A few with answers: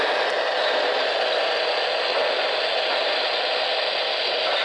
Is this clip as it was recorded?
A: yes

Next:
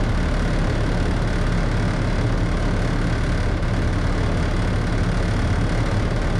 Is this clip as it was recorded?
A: yes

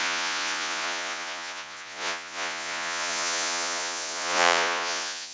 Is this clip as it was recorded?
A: no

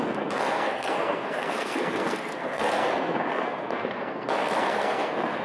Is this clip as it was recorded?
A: no